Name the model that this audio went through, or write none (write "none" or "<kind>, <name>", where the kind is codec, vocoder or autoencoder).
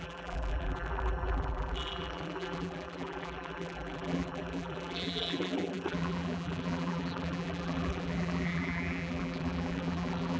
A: vocoder, BigVGAN v2